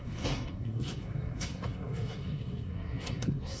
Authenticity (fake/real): fake